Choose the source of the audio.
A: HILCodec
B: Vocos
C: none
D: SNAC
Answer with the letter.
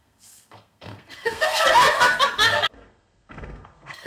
D